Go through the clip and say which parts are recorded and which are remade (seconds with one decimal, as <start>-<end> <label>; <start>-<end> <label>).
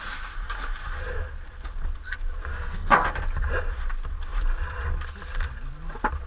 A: 0.0-2.5 recorded; 2.5-3.1 remade; 3.1-6.3 recorded